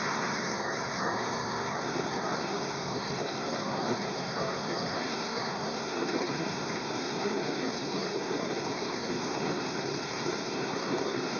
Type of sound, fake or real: fake